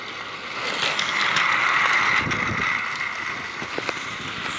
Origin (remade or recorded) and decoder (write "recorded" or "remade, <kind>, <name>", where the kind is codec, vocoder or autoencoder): recorded